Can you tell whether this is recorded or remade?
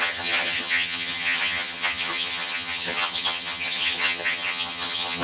remade